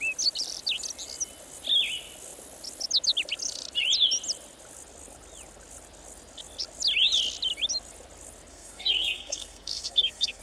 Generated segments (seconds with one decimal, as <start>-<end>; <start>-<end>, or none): 8.5-10.4